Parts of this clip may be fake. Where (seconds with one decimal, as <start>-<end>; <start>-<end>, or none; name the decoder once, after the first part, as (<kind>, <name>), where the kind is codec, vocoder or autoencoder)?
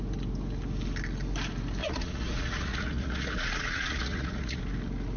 1.8-4.6 (vocoder, Vocos)